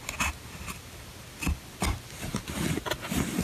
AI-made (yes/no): no